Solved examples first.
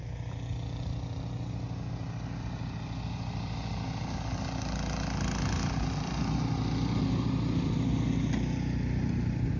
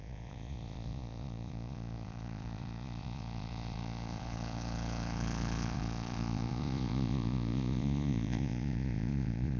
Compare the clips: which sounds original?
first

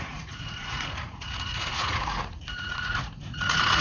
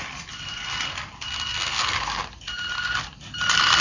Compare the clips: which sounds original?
second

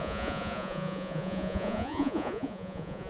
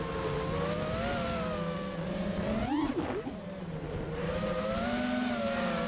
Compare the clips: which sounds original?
second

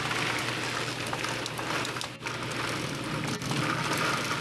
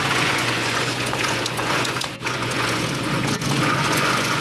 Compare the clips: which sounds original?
first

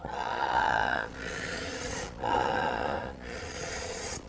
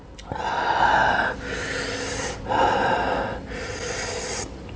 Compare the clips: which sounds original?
second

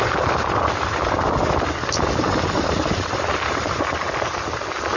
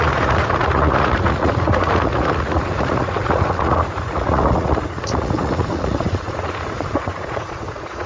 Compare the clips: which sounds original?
first